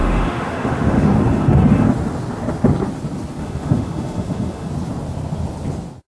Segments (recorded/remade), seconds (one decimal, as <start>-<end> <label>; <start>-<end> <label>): 0.0-1.1 remade; 1.1-3.4 recorded; 3.4-4.7 remade; 4.7-6.1 recorded